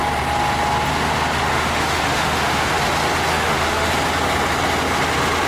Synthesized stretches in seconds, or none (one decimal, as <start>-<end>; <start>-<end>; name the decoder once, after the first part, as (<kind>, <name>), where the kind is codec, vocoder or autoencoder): 1.5-2.7 (autoencoder, DAC-VAE); 3.3-3.9